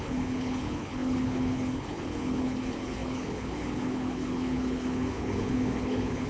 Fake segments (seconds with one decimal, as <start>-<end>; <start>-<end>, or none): 0.0-6.3